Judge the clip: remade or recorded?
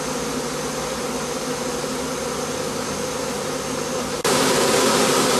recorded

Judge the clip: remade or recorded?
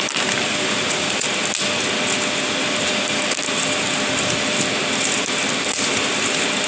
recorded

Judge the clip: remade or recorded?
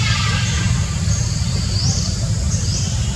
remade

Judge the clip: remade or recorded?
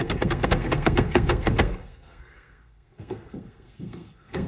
remade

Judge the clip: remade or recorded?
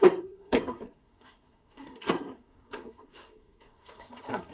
remade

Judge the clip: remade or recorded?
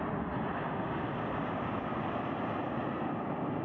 recorded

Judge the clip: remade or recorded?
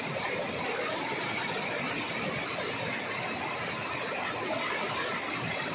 recorded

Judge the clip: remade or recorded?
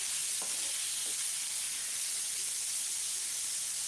recorded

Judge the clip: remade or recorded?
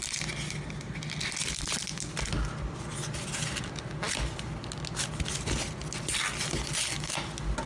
recorded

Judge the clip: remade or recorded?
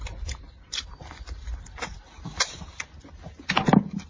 recorded